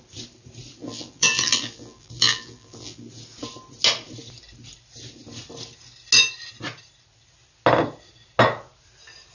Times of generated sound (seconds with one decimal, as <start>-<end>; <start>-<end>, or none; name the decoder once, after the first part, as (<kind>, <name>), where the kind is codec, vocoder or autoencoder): 0.8-3.1 (vocoder, BigVGAN v2)

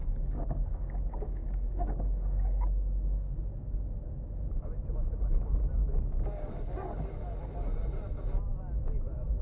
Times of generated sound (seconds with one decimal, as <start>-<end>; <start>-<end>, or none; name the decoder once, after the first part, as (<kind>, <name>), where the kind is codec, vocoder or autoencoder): 0.0-4.1 (codec, DAC); 5.8-6.5

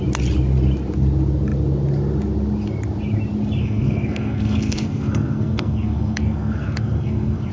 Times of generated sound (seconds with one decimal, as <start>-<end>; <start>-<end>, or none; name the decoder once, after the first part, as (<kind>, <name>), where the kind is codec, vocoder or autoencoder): 3.6-7.5 (codec, SNAC)

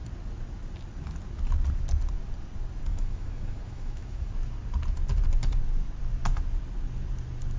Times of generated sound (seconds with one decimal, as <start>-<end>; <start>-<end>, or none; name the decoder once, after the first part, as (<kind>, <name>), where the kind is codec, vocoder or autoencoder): 2.9-4.3 (autoencoder, DAC-VAE)

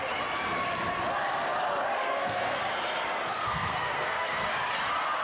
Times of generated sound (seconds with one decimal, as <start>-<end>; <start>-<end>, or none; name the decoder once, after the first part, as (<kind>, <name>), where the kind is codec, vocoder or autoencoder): 2.0-2.6 (codec, SNAC); 3.4-4.5